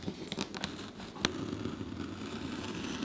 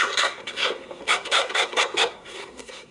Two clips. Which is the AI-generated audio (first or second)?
second